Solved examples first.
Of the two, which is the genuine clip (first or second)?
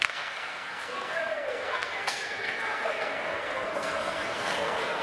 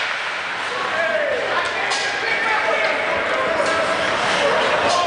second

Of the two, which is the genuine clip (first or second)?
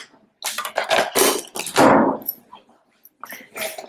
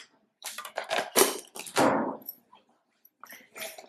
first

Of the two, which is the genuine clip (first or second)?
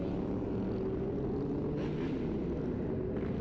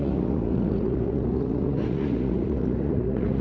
first